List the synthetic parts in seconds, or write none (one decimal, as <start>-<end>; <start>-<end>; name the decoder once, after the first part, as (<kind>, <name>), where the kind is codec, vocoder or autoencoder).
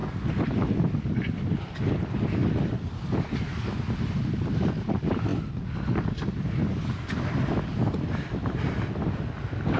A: none